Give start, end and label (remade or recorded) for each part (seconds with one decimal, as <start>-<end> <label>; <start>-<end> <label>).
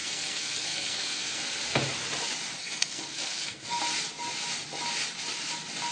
0.0-1.4 remade; 1.4-2.6 recorded; 2.6-3.8 remade; 3.8-5.9 recorded